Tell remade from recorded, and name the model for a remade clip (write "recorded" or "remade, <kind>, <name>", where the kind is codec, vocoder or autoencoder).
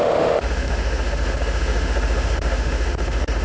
remade, autoencoder, DAC-VAE